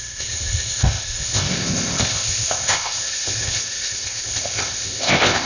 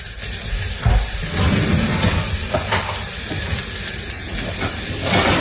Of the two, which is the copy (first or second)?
first